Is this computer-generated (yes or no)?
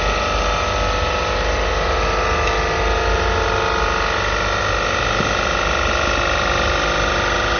no